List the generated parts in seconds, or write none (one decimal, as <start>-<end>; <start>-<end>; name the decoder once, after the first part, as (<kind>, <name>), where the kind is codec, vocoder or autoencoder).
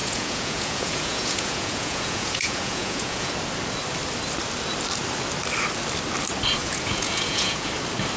0.0-3.3 (vocoder, Vocos); 6.6-7.7